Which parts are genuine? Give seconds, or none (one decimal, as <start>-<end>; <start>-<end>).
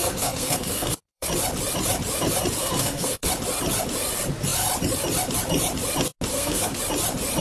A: 1.3-2.6; 3.3-6.3; 6.8-7.4